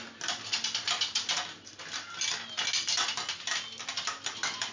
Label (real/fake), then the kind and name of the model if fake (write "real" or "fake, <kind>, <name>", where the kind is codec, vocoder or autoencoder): real